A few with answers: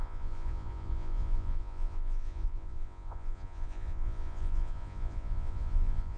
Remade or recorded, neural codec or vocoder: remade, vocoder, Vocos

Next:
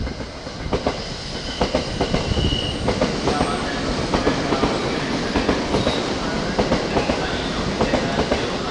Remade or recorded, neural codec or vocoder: recorded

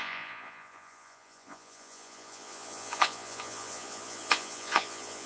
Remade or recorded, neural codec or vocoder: remade, vocoder, Vocos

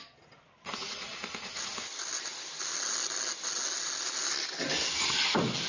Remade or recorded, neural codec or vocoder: recorded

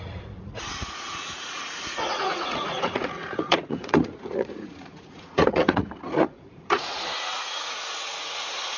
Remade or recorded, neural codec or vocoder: remade, vocoder, Vocos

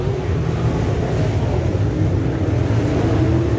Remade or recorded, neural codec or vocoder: recorded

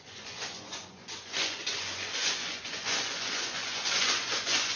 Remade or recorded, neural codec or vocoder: remade, vocoder, Vocos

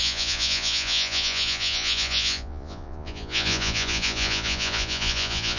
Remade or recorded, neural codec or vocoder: remade, vocoder, Vocos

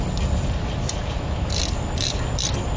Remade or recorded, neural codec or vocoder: recorded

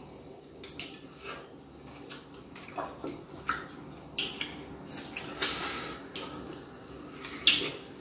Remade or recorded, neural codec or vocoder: recorded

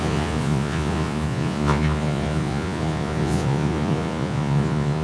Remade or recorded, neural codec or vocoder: remade, vocoder, Vocos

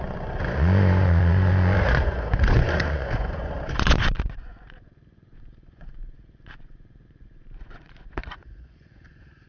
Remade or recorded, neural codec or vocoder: remade, vocoder, Vocos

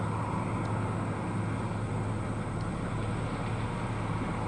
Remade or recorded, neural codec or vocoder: recorded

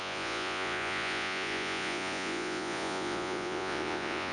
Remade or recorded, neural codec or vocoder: remade, vocoder, Vocos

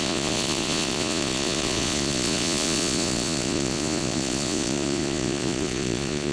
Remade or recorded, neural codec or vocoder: remade, vocoder, Vocos